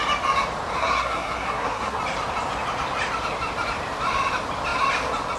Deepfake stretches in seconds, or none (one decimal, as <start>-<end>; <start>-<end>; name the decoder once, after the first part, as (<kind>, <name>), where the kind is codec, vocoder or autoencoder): 0.8-2.0 (codec, SNAC)